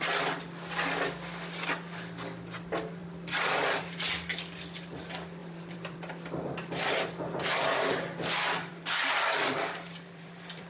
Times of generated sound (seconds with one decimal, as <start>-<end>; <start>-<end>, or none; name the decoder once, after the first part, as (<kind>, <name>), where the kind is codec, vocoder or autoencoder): 5.4-6.1 (vocoder, BigVGAN v2); 8.7-10.7